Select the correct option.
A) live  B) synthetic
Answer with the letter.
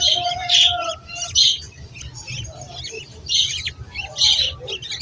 A